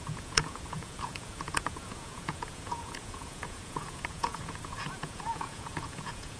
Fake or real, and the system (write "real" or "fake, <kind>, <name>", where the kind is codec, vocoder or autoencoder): fake, vocoder, Vocos